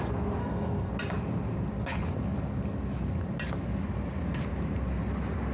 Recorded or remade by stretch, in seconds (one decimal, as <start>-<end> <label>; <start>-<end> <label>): 0.0-0.4 recorded; 0.4-0.9 remade; 0.9-5.5 recorded